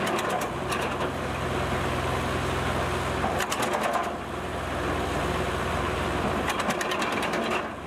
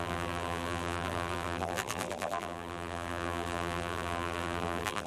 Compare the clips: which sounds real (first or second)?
first